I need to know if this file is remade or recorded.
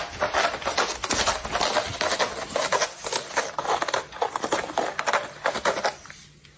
recorded